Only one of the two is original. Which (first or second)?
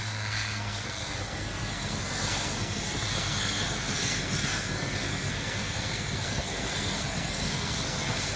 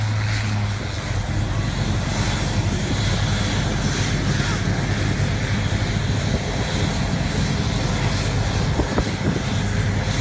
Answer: second